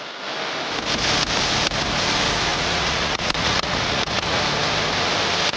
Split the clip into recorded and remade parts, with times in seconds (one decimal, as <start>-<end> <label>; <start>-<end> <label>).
0.0-2.5 recorded; 2.5-4.4 remade; 4.4-5.6 recorded